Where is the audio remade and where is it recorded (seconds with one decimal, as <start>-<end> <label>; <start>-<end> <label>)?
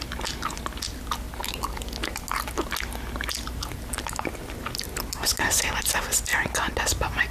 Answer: 0.0-7.3 recorded